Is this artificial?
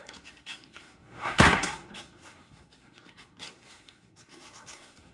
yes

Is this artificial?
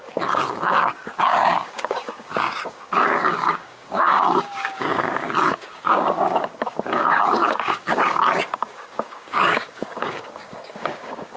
yes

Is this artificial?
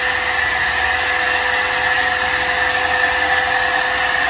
no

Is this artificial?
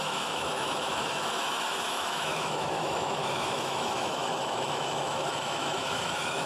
yes